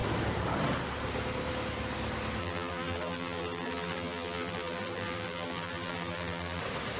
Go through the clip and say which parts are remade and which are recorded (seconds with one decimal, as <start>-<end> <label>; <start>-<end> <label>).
0.0-2.4 recorded; 2.4-6.6 remade; 6.6-7.0 recorded